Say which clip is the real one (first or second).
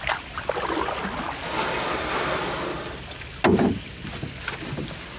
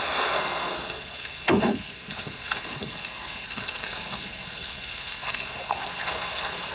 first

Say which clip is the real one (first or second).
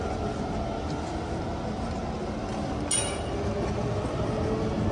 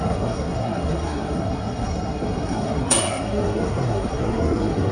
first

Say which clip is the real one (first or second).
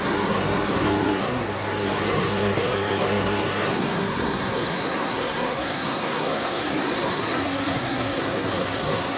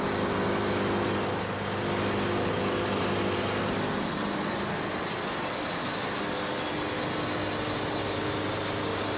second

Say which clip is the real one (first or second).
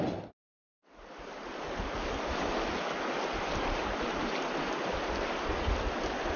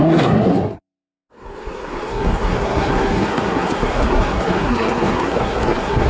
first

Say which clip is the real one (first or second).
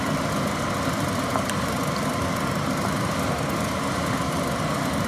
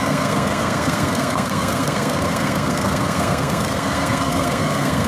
first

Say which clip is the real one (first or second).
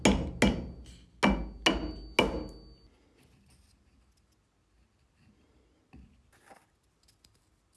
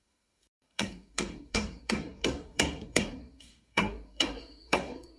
first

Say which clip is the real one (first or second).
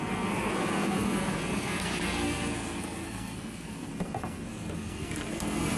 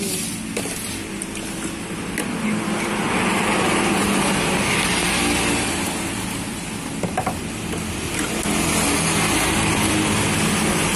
second